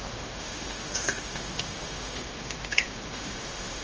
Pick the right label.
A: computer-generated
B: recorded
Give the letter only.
A